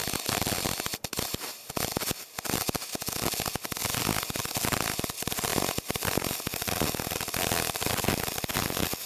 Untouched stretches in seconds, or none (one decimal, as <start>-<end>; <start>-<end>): 1.7-5.5; 6.3-9.1